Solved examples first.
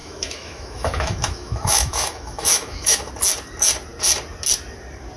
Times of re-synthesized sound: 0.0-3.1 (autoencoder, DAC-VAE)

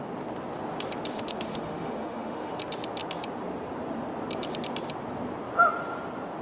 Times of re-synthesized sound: 1.1-2.5 (autoencoder, DAC-VAE)

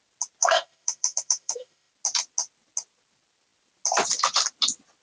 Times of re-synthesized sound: 0.4-1.9 (autoencoder, DAC-VAE)

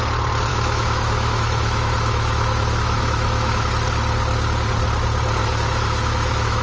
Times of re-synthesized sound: 0.5-3.7 (autoencoder, DAC-VAE); 5.4-6.6

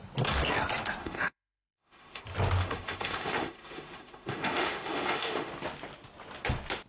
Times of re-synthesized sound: 1.0-2.2 (autoencoder, DAC-VAE); 2.6-5.5

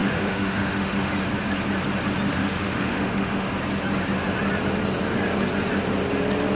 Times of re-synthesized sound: 0.0-1.1 (autoencoder, DAC-VAE); 2.3-3.5

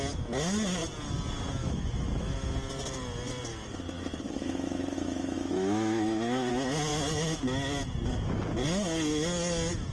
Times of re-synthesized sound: 1.6-2.5 (autoencoder, DAC-VAE); 3.5-6.5; 6.9-7.4